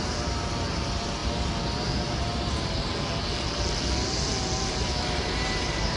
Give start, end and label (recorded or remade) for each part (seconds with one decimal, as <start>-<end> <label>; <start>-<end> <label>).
0.0-1.2 remade; 1.2-1.9 recorded; 1.9-2.9 remade; 2.9-4.7 recorded; 4.7-6.0 remade